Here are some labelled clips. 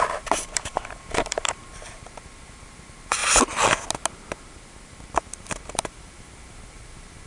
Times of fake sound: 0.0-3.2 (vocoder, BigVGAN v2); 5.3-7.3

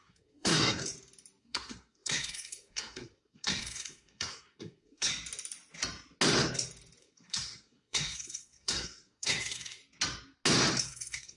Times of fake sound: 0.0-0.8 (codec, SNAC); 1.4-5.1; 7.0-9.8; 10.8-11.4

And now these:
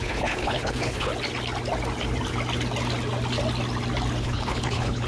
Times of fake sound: 0.0-1.1 (codec, HILCodec); 4.2-5.1